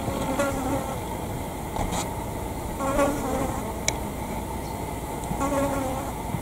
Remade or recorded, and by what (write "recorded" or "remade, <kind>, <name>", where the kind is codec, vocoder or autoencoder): recorded